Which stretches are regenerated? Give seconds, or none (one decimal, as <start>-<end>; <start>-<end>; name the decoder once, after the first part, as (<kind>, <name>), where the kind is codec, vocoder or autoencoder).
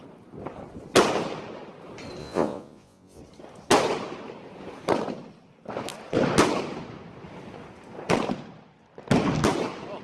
2.2-3.2 (vocoder, Vocos)